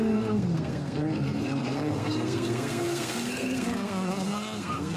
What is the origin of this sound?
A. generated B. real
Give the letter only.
A